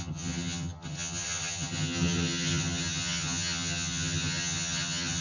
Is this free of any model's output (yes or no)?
no